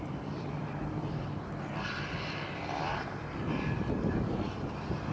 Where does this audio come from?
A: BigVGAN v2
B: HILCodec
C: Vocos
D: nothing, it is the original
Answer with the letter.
A